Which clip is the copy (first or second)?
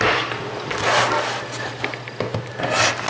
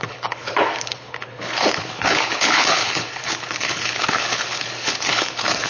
second